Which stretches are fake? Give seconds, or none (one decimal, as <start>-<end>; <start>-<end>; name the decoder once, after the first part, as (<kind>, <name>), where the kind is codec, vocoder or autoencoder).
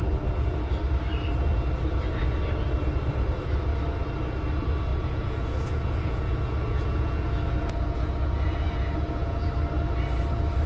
4.9-9.5 (vocoder, Vocos)